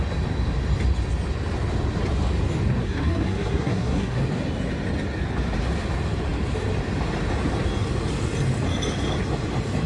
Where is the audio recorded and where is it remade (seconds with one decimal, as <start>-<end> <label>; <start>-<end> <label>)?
0.0-2.8 recorded; 2.8-4.2 remade; 4.2-9.9 recorded